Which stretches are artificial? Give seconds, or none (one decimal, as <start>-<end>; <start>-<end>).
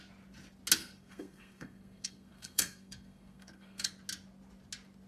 0.8-3.9